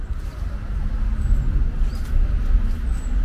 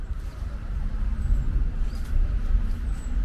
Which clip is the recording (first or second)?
first